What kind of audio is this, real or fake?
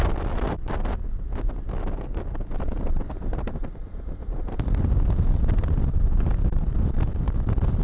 real